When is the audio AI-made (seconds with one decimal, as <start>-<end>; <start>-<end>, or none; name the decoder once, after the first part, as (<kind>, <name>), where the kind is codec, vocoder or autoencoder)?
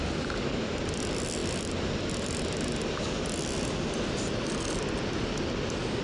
none